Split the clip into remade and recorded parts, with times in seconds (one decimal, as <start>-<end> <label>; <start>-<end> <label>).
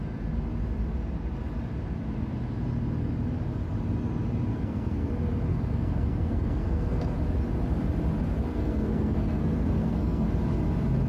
0.0-4.5 recorded; 4.5-5.1 remade; 5.1-5.5 recorded; 5.5-7.2 remade; 7.2-8.5 recorded; 8.5-10.3 remade; 10.3-11.1 recorded